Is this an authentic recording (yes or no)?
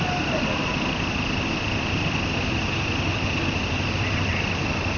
yes